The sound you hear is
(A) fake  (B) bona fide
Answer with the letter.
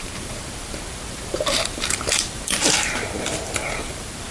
A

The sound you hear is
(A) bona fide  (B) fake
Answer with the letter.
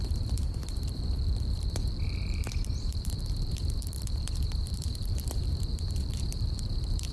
B